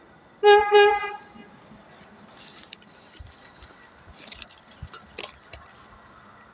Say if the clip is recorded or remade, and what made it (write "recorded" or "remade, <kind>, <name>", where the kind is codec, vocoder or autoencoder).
recorded